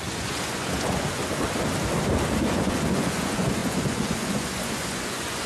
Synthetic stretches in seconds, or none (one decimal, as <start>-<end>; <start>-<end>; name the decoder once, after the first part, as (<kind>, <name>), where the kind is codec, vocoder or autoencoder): 0.0-1.2 (vocoder, Vocos); 2.4-5.5